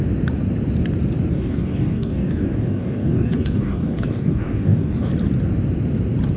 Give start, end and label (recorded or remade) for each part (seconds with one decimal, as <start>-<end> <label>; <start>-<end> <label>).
0.0-1.3 recorded; 1.3-5.1 remade; 5.1-6.4 recorded